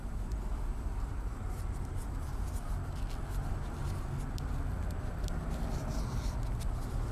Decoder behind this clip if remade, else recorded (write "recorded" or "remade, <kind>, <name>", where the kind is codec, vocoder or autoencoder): recorded